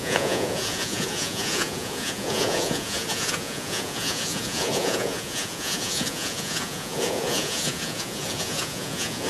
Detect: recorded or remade remade